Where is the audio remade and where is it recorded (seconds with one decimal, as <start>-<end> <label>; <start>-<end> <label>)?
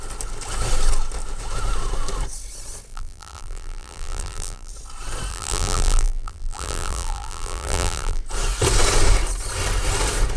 0.0-2.9 recorded; 2.9-4.7 remade; 4.7-5.3 recorded; 5.3-8.2 remade; 8.2-10.4 recorded